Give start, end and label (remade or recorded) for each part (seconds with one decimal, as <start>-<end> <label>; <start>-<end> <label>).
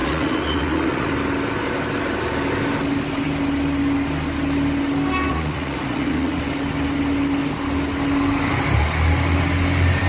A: 0.0-1.1 remade; 1.1-5.3 recorded; 5.3-6.4 remade; 6.4-10.1 recorded